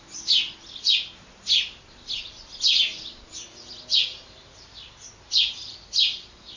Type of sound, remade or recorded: recorded